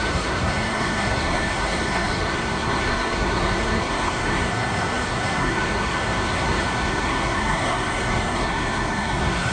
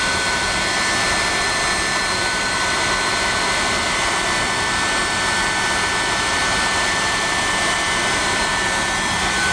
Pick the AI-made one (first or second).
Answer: first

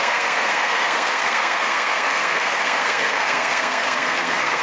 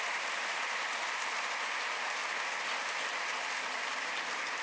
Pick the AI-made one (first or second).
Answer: first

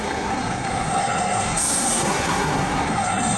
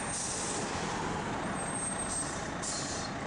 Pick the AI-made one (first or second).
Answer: first